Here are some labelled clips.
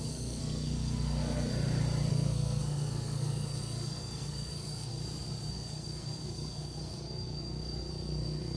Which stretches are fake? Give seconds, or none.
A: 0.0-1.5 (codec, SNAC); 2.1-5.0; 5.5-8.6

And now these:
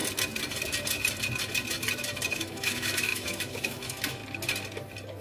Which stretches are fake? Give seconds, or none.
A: 2.3-4.2 (autoencoder, DAC-VAE)

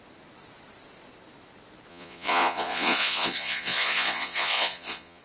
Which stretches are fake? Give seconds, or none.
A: 1.9-5.2 (vocoder, Vocos)

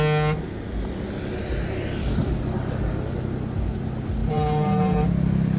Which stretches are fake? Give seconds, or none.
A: 4.2-5.1 (vocoder, BigVGAN v2)

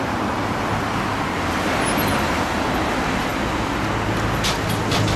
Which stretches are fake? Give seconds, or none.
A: none

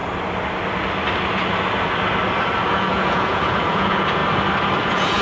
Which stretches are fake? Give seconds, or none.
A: 2.7-4.2 (vocoder, Vocos); 4.8-5.2

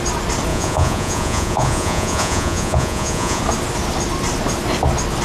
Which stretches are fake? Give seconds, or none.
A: 0.5-3.4 (vocoder, Vocos)

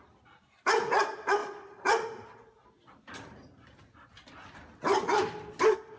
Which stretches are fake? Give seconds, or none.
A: none